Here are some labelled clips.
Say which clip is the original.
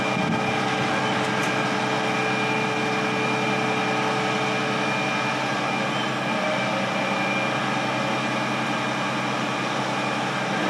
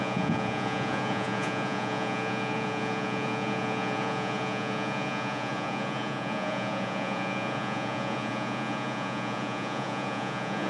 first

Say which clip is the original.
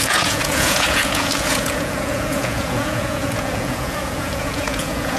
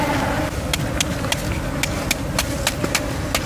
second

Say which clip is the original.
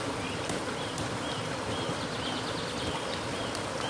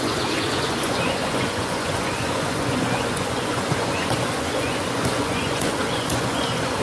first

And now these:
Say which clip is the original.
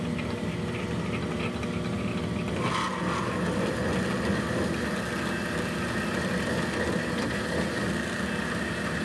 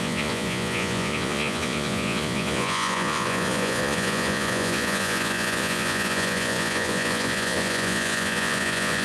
first